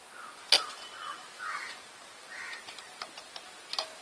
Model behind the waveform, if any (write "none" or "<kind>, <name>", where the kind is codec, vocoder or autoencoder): none